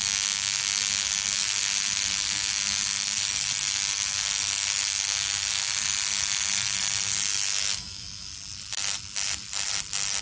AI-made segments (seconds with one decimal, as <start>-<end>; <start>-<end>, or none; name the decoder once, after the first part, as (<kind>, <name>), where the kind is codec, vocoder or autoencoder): 7.3-8.3 (autoencoder, DAC-VAE)